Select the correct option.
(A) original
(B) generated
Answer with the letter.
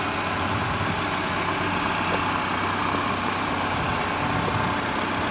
A